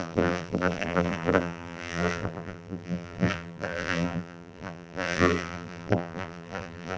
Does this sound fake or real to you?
fake